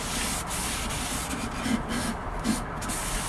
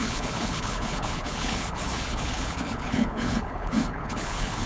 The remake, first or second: second